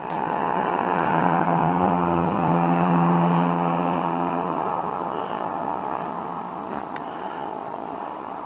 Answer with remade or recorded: remade